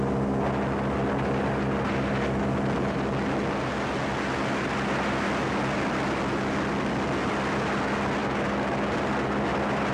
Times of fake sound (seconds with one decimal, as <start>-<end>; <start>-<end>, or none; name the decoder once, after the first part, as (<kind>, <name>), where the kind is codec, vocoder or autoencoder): none